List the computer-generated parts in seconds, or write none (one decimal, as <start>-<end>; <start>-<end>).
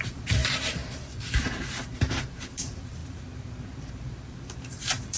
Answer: 0.0-5.2